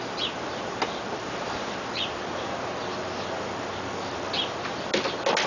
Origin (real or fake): real